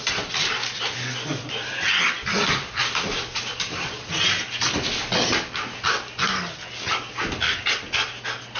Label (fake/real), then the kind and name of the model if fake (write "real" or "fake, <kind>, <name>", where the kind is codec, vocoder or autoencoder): real